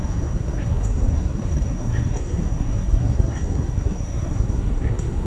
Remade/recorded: remade